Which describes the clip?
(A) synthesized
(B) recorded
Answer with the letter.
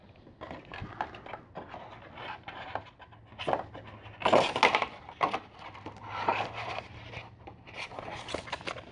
B